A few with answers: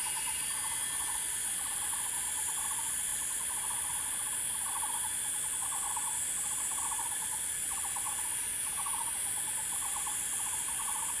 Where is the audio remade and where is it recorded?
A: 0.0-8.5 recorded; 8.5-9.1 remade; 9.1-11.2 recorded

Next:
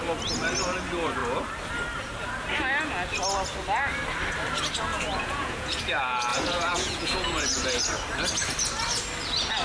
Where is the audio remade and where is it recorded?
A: 0.0-4.9 recorded; 4.9-5.8 remade; 5.8-6.3 recorded; 6.3-7.8 remade; 7.8-9.6 recorded

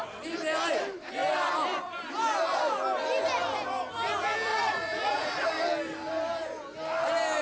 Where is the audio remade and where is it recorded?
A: 0.0-4.5 recorded; 4.5-5.5 remade; 5.5-7.4 recorded